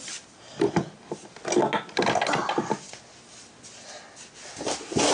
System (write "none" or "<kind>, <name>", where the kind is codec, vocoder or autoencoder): none